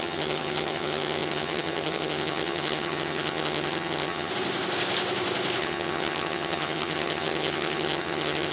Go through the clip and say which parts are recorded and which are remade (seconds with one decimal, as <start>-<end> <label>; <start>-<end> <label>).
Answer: 0.0-4.3 remade; 4.3-5.6 recorded; 5.6-8.5 remade